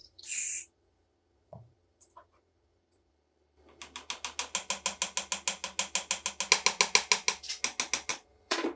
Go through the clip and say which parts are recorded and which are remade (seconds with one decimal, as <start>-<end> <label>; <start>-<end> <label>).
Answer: 0.0-3.1 remade; 3.1-8.1 recorded; 8.1-8.8 remade